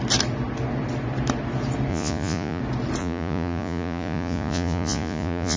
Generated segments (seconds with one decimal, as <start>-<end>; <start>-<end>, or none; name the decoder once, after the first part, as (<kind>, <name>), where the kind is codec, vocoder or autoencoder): 1.9-2.6 (vocoder, Vocos); 3.0-5.6